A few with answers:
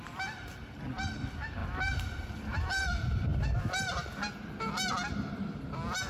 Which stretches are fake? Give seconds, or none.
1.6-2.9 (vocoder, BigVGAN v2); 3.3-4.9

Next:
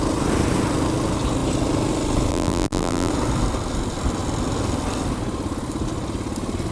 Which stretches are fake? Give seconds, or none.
2.3-3.1 (vocoder, BigVGAN v2)

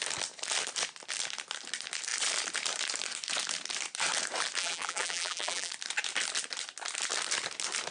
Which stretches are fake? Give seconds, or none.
4.6-5.7 (vocoder, BigVGAN v2)

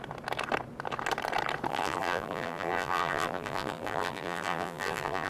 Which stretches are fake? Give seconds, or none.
1.7-5.3 (vocoder, BigVGAN v2)

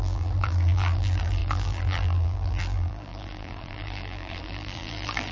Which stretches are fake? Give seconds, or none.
0.0-5.3 (vocoder, BigVGAN v2)